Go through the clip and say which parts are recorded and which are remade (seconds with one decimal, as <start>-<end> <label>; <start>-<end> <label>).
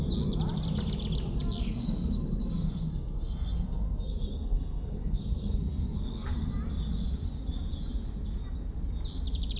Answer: 0.0-1.6 recorded; 1.6-6.5 remade; 6.5-9.6 recorded